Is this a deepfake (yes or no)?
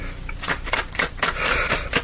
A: no